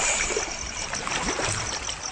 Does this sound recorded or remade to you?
recorded